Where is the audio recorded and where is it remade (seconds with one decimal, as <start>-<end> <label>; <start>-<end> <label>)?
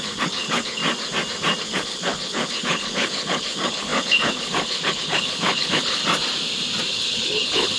0.0-0.8 remade; 0.8-1.6 recorded; 1.6-6.0 remade; 6.0-6.9 recorded; 6.9-7.8 remade